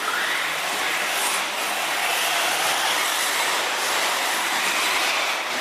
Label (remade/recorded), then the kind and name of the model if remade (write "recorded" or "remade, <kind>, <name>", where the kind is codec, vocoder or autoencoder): recorded